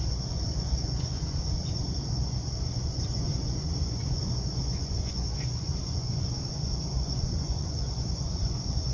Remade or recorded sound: remade